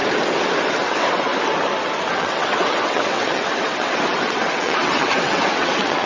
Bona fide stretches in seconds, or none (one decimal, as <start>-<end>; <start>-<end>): 0.0-0.7; 1.3-2.1